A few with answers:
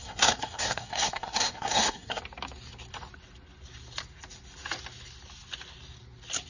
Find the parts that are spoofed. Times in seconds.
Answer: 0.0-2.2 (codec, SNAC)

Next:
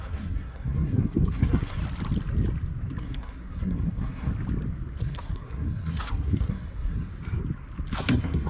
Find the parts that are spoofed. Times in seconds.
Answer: 0.0-1.8 (codec, SNAC); 3.0-4.3; 5.0-7.1; 8.0-8.5

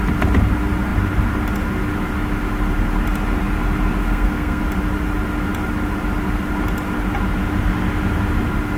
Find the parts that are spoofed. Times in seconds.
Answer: 4.0-4.6 (codec, SNAC)

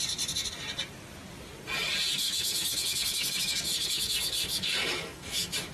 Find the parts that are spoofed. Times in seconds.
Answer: 2.1-5.7 (autoencoder, DAC-VAE)

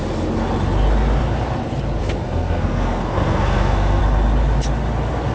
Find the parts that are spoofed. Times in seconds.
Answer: 2.0-4.0 (codec, SNAC)

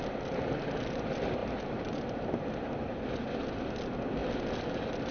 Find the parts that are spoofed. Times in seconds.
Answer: 1.4-3.0 (vocoder, BigVGAN v2)